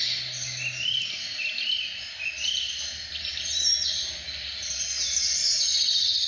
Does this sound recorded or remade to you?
recorded